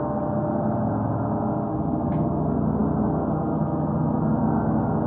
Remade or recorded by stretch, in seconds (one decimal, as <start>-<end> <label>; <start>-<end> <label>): 0.0-5.1 recorded

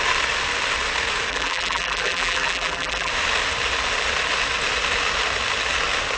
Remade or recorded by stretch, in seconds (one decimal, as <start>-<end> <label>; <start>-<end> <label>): 0.0-1.3 recorded; 1.3-3.1 remade; 3.1-6.2 recorded

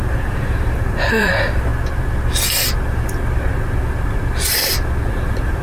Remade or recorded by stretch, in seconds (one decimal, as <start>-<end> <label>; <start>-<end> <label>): 0.0-1.7 remade; 1.7-5.1 recorded; 5.1-5.6 remade

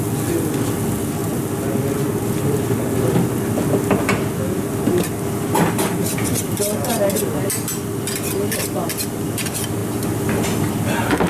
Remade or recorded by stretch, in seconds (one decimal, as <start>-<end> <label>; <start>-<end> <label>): 0.0-11.3 recorded

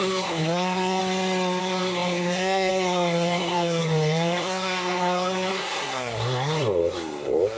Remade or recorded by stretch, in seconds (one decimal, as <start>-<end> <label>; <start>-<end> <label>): 0.0-1.0 remade; 1.0-1.6 recorded; 1.6-7.6 remade

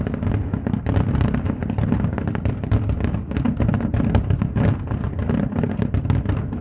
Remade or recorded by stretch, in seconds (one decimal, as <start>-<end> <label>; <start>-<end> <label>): 0.0-6.6 recorded

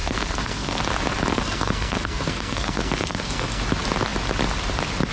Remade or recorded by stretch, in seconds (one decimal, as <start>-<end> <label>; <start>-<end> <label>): 0.0-0.8 remade; 0.8-1.3 recorded; 1.3-3.6 remade; 3.6-5.1 recorded